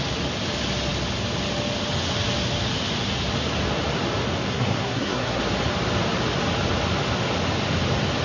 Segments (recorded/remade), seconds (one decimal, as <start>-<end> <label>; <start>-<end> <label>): 0.0-4.5 recorded; 4.5-5.4 remade; 5.4-8.2 recorded